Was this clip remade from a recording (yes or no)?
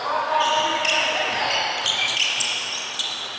no